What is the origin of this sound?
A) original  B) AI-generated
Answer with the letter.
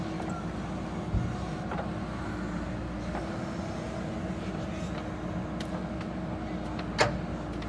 A